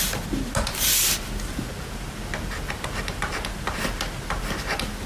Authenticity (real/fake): real